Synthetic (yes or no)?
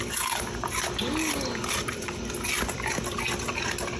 no